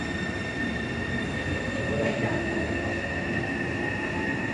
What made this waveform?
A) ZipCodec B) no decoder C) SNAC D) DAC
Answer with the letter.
B